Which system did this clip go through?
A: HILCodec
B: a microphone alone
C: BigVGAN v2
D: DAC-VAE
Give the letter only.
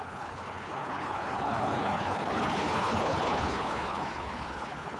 A